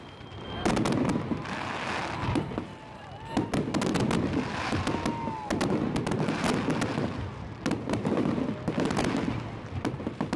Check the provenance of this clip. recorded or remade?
recorded